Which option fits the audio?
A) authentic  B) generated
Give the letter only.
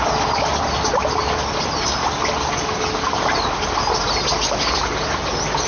A